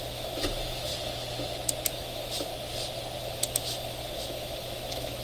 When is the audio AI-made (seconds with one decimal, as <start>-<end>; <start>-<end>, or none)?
0.0-0.9; 1.9-2.5; 3.2-5.2